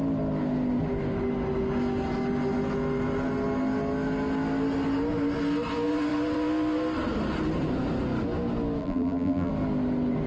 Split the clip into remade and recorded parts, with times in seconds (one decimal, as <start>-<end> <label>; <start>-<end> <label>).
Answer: 0.0-8.8 recorded; 8.8-9.5 remade; 9.5-10.3 recorded